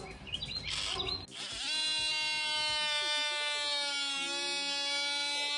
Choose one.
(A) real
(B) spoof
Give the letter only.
A